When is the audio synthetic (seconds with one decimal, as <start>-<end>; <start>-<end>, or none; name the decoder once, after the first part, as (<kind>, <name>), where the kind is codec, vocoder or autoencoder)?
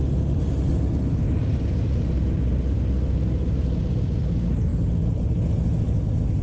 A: none